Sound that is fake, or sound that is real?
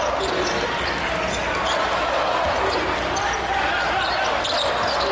real